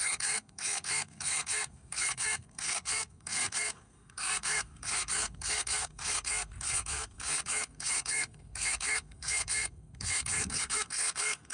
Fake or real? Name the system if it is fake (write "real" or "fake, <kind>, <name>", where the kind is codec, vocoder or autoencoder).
fake, codec, SNAC